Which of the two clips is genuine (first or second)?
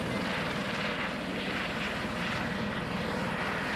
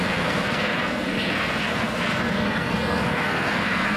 first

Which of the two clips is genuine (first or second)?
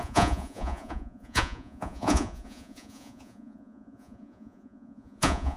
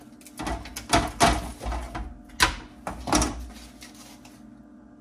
second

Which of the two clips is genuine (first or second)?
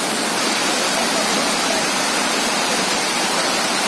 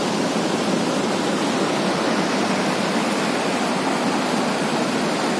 second